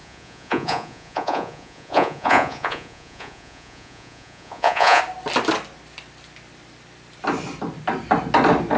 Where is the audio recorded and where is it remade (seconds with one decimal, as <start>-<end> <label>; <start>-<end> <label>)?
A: 0.0-5.0 remade; 5.0-8.8 recorded